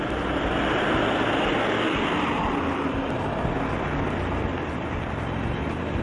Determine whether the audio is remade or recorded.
recorded